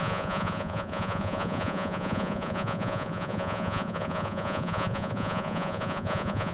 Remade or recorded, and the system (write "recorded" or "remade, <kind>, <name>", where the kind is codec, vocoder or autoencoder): remade, vocoder, Vocos